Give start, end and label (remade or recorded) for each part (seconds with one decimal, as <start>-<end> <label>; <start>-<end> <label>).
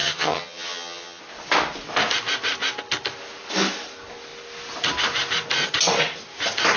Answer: 0.0-1.2 remade; 1.2-6.8 recorded